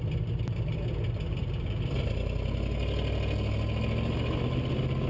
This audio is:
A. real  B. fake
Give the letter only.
A